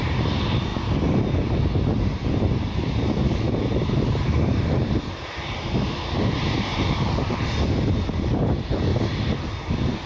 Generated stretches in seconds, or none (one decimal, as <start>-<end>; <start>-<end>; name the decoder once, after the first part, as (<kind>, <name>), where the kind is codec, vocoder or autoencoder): 0.0-0.7 (vocoder, BigVGAN v2); 2.9-8.9; 9.7-10.1